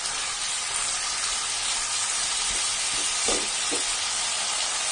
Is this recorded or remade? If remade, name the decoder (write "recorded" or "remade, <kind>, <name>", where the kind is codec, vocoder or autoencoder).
recorded